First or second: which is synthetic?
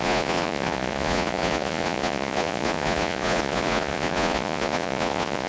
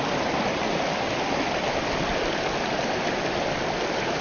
first